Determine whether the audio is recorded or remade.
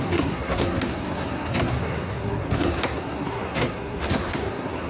remade